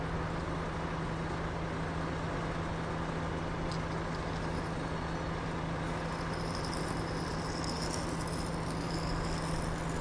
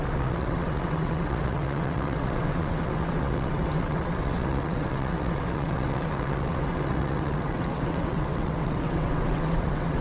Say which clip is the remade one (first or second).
second